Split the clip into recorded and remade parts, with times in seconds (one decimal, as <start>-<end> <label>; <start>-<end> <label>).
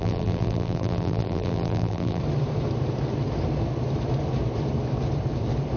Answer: 0.0-2.2 remade; 2.2-5.8 recorded